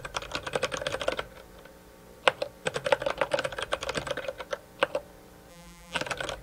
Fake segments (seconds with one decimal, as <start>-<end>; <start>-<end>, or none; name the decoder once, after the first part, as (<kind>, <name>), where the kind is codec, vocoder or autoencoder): 5.5-6.0 (vocoder, BigVGAN v2)

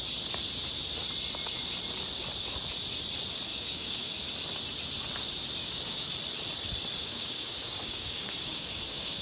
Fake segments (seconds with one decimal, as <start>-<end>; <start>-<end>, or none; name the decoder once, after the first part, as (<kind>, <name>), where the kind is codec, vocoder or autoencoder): 3.5-4.1 (codec, DAC); 5.6-6.1; 7.0-9.2

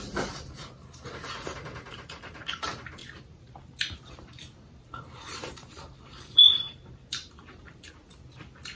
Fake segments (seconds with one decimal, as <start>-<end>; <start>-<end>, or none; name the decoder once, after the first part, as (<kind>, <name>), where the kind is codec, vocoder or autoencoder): 3.0-7.9 (vocoder, BigVGAN v2)

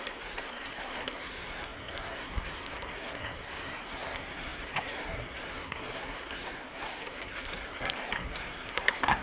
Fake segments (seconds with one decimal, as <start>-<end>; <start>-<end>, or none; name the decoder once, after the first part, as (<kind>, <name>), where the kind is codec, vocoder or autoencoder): 0.0-9.2 (codec, SNAC)

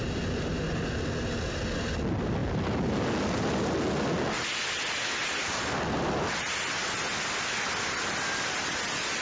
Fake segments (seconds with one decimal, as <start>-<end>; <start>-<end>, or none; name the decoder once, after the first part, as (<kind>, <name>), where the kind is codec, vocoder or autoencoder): none